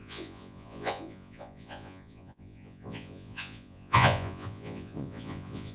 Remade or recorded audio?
remade